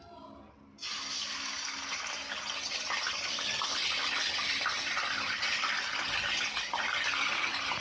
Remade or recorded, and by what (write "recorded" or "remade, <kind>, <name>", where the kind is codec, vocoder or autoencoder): recorded